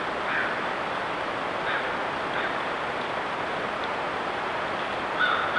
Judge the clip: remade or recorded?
recorded